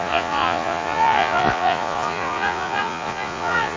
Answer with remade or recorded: remade